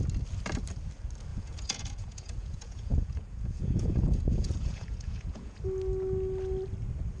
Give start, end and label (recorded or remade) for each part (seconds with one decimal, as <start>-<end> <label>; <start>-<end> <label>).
0.0-1.3 recorded; 1.3-5.6 remade; 5.6-7.2 recorded